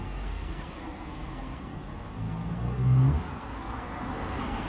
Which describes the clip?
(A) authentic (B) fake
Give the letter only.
B